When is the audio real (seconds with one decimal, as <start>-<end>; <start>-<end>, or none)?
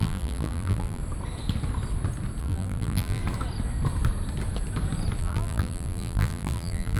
1.0-2.4; 3.2-5.2